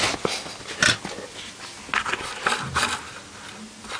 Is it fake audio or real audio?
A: real